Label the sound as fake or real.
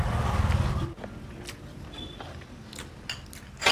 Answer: real